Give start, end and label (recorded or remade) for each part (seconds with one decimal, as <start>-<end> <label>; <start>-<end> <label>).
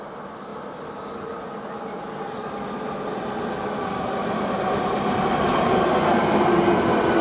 0.0-7.2 recorded